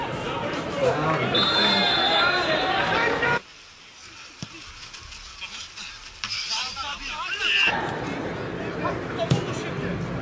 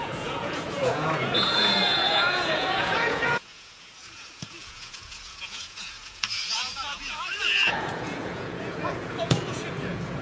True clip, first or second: first